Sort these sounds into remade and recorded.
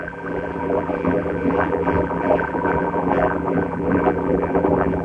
remade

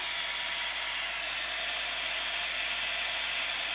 recorded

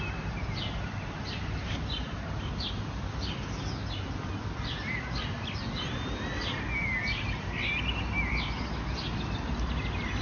recorded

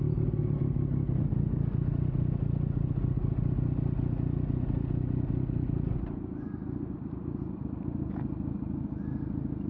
recorded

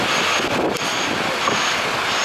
recorded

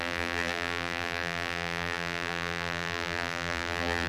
remade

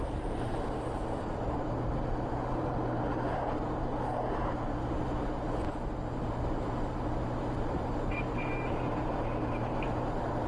remade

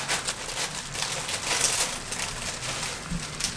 recorded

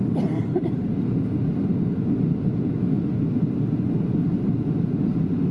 recorded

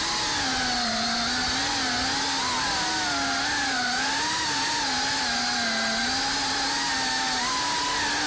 recorded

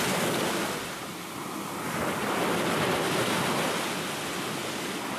recorded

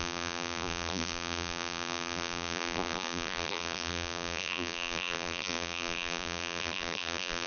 remade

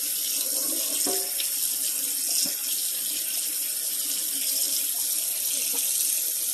recorded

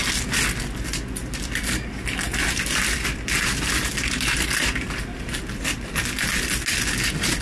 recorded